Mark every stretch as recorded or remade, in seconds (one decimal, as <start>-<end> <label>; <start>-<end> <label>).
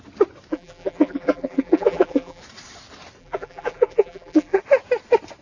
0.0-0.5 recorded; 0.5-2.4 remade; 2.4-3.2 recorded; 3.2-4.6 remade; 4.6-5.4 recorded